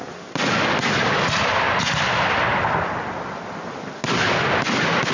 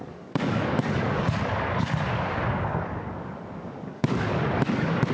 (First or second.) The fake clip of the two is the second